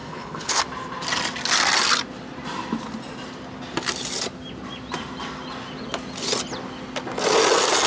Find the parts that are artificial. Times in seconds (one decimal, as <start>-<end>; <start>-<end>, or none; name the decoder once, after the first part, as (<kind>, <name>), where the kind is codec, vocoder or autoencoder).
0.0-0.6 (codec, HILCodec)